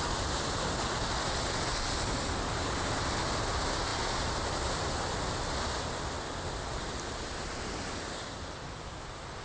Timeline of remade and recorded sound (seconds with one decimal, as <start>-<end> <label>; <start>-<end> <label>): 0.0-3.9 recorded; 3.9-4.8 remade; 4.8-9.4 recorded